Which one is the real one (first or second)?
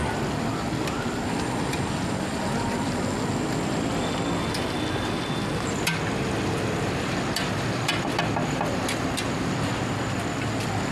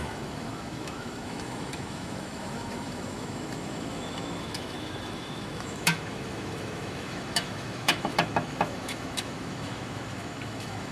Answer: first